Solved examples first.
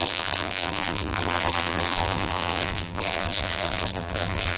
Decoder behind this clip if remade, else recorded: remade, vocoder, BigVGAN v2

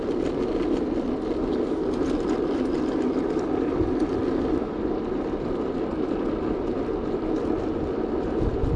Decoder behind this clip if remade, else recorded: recorded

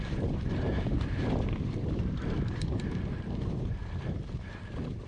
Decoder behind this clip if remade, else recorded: remade, vocoder, BigVGAN v2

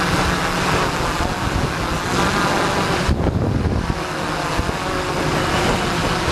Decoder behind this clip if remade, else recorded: recorded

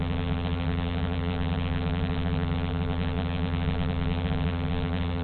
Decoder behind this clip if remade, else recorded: remade, vocoder, BigVGAN v2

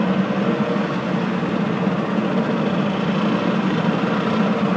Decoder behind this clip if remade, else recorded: recorded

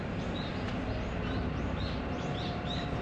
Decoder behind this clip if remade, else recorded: remade, vocoder, BigVGAN v2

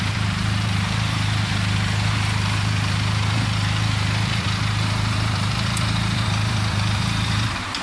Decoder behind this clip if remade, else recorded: remade, vocoder, BigVGAN v2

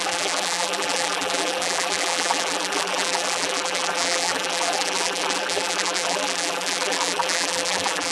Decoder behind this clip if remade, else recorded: remade, vocoder, BigVGAN v2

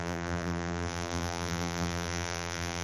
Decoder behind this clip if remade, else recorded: remade, vocoder, BigVGAN v2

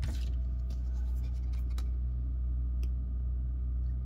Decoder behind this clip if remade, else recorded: remade, vocoder, BigVGAN v2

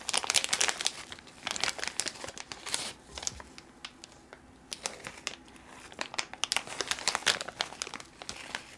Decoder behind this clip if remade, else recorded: recorded